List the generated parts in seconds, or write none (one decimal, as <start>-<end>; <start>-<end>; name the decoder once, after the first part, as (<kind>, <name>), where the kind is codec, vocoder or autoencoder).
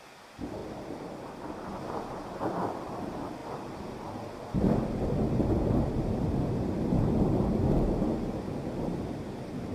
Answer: 1.7-2.4 (vocoder, BigVGAN v2)